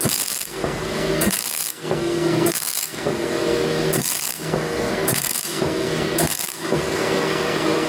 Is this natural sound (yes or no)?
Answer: no